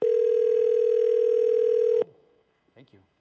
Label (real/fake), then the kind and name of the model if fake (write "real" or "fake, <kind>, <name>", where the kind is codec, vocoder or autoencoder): fake, autoencoder, DAC-VAE